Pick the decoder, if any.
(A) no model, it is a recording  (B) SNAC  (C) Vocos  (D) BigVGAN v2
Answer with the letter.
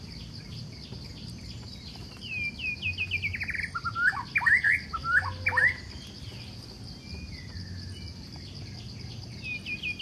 A